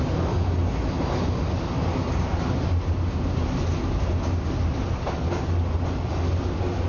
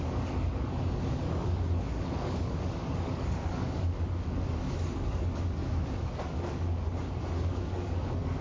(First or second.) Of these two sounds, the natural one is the first